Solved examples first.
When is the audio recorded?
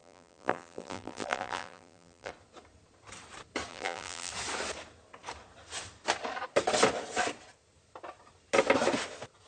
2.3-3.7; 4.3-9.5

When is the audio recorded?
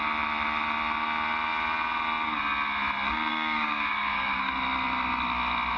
0.0-3.3; 4.5-5.8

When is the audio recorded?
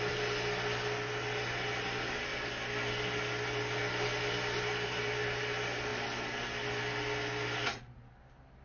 0.0-8.6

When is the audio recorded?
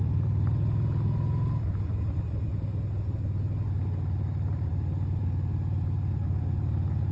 0.0-7.1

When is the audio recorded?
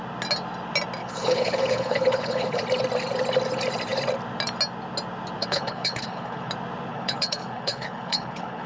0.0-1.0; 2.6-5.4; 6.5-6.9